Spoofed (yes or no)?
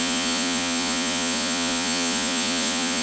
yes